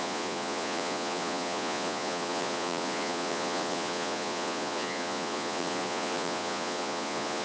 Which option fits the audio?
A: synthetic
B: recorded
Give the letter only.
A